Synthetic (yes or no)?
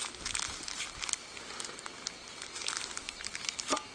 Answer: no